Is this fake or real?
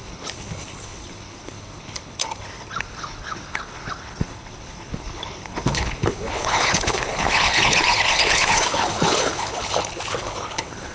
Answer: fake